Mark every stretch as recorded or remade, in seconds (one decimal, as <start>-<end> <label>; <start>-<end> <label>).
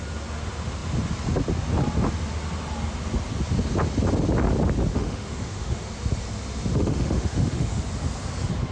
0.0-4.9 recorded; 4.9-5.9 remade; 5.9-6.7 recorded; 6.7-7.8 remade; 7.8-8.7 recorded